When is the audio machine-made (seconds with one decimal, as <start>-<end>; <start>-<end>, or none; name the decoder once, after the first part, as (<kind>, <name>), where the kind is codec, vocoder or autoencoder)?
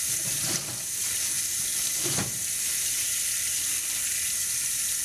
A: 0.0-5.0 (vocoder, BigVGAN v2)